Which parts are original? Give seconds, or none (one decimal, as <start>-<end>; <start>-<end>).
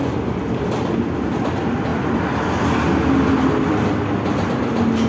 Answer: 0.0-5.1